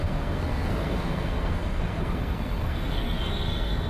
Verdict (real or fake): fake